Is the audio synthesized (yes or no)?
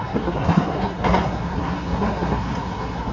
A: yes